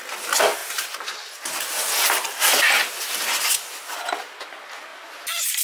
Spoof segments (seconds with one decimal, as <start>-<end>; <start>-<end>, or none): none